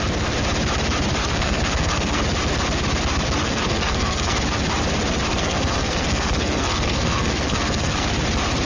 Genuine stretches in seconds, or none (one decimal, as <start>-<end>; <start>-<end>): 0.0-1.2; 2.2-3.4; 4.4-5.3; 8.1-8.7